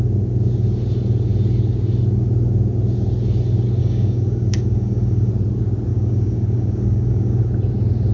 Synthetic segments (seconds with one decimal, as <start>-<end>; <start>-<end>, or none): 3.8-5.3; 5.9-7.4